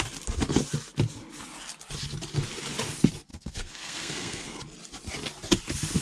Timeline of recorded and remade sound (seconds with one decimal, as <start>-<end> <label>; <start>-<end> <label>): 0.0-3.3 recorded; 3.3-4.6 remade; 4.6-6.0 recorded